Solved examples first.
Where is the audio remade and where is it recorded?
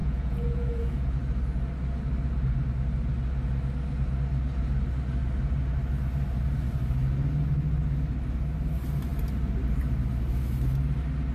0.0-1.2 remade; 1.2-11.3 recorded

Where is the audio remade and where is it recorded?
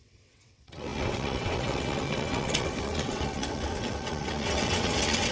0.0-5.3 remade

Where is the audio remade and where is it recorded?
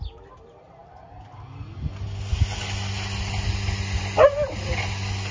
0.0-5.3 recorded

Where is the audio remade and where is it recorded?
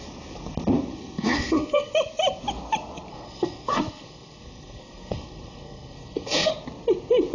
0.0-0.9 recorded; 0.9-1.9 remade; 1.9-3.1 recorded; 3.1-6.5 remade; 6.5-7.3 recorded